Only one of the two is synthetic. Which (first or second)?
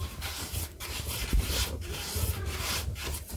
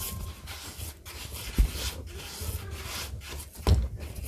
first